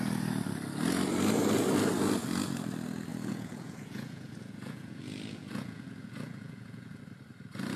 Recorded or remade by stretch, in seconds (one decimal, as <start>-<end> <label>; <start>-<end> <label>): 0.0-3.1 recorded; 3.1-7.0 remade; 7.0-7.8 recorded